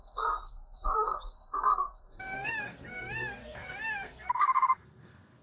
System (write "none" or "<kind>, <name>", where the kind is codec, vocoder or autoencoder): codec, SNAC